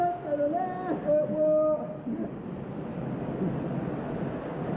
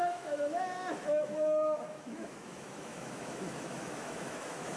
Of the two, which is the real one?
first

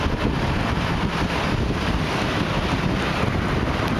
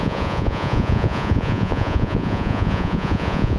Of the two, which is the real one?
first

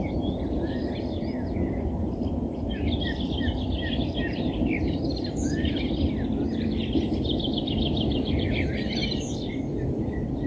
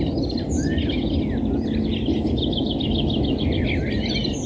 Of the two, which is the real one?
second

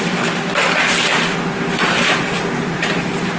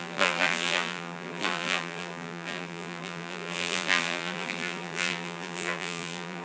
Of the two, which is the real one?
first